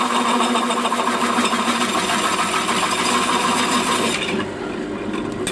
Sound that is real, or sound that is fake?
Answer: real